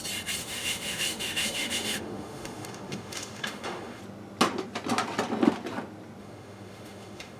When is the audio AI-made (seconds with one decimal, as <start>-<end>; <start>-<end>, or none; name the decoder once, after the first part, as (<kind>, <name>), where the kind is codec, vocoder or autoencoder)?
0.4-4.0 (autoencoder, DAC-VAE); 6.2-7.4